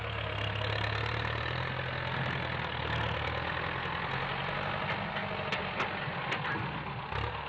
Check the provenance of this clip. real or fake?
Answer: real